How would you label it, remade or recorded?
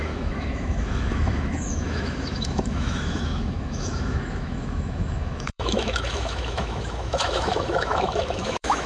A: remade